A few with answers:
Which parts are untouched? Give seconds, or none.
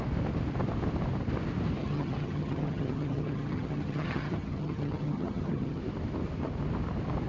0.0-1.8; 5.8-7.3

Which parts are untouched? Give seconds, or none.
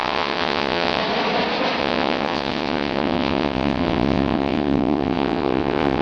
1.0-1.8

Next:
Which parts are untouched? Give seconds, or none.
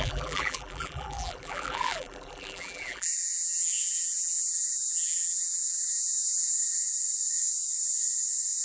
6.9-8.6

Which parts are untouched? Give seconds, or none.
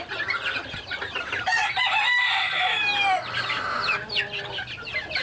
0.0-5.2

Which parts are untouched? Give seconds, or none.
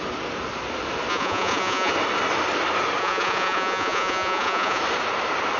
0.0-1.1; 1.9-3.0; 4.8-5.6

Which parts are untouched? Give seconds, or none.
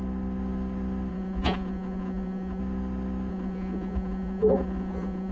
0.0-1.1; 2.6-3.3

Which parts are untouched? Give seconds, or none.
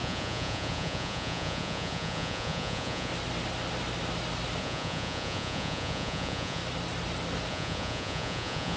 3.1-4.6; 6.6-7.5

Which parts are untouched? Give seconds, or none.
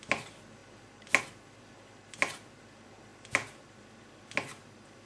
0.0-5.1